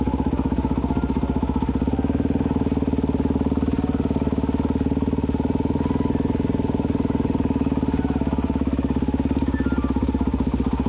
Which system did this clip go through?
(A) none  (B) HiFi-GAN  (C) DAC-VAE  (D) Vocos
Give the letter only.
A